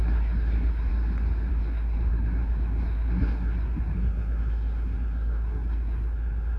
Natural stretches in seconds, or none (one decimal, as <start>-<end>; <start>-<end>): 0.9-1.5